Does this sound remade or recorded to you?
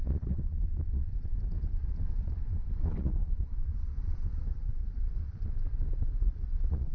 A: remade